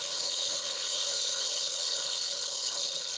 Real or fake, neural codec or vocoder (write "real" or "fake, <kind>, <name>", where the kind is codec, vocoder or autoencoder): fake, codec, HILCodec